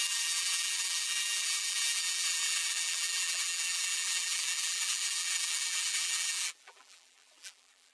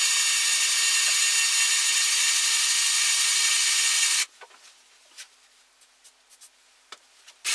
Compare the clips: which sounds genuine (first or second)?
second